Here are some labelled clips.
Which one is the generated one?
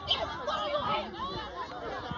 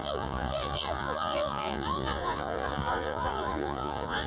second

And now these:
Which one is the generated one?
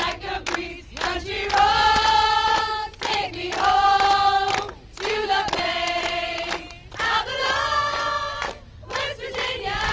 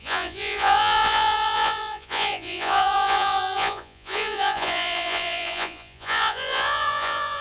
second